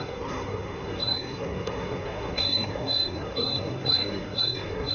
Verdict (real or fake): fake